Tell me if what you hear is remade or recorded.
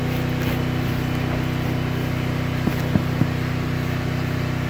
recorded